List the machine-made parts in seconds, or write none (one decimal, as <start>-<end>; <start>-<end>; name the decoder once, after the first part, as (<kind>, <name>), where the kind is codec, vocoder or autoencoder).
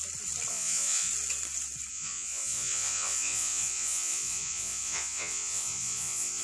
0.5-1.1 (vocoder, Vocos); 1.9-6.4